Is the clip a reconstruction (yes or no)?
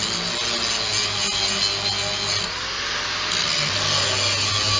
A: no